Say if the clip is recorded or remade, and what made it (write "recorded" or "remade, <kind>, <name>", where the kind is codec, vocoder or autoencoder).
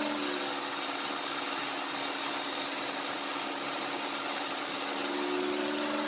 recorded